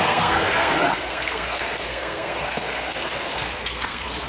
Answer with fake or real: fake